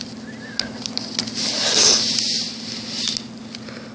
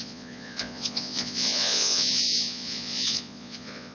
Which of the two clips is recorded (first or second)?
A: first